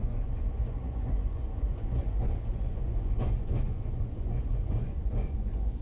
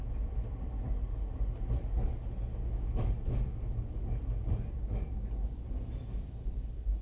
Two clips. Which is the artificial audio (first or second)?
first